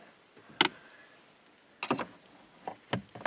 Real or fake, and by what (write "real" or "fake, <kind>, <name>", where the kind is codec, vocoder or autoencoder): real